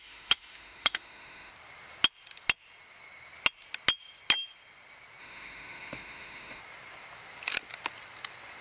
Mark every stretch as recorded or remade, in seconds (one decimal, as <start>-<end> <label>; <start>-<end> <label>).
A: 0.0-1.5 remade; 1.5-5.2 recorded; 5.2-6.6 remade; 6.6-8.6 recorded